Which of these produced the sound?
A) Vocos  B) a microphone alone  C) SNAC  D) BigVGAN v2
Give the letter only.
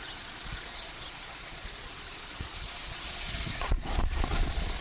A